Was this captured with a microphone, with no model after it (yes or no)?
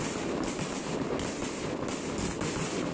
yes